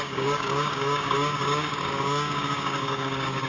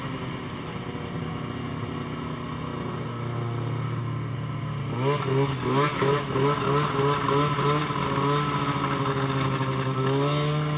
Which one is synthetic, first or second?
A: first